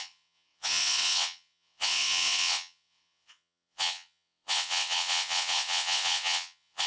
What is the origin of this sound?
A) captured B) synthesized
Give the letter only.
B